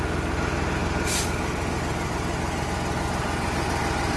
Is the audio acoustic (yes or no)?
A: yes